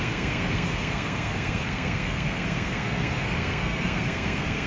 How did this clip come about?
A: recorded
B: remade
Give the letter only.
B